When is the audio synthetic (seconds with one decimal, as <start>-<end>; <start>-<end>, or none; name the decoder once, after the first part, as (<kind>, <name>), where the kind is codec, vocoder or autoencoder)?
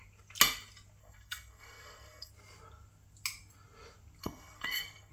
1.0-2.3 (codec, SNAC); 4.2-5.1